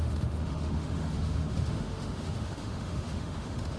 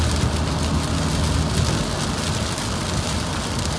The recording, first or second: second